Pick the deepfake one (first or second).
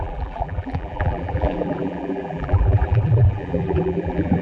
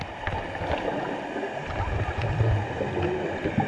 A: first